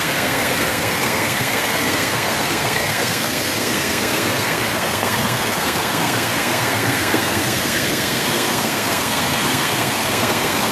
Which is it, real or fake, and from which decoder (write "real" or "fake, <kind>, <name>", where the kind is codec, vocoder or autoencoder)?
fake, codec, SNAC